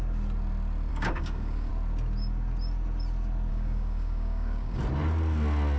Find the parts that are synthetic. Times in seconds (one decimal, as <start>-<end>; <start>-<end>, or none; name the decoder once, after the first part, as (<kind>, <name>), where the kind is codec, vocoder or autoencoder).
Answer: 0.9-1.7 (codec, DAC); 3.5-4.8